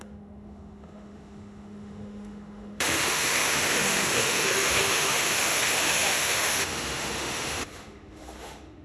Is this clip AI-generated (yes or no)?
yes